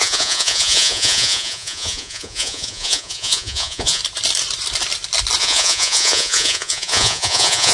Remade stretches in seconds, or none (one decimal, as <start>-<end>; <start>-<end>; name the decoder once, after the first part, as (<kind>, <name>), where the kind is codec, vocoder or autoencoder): 0.0-4.0 (vocoder, Vocos); 5.4-7.7